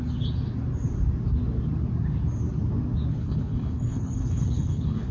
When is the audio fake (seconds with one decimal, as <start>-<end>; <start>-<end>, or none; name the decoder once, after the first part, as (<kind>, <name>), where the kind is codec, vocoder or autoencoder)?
3.1-5.1 (codec, HILCodec)